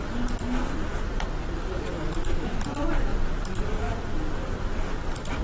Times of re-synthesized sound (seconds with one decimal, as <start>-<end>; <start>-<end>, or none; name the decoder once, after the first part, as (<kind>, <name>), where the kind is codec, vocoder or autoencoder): 1.9-2.5 (autoencoder, DAC-VAE)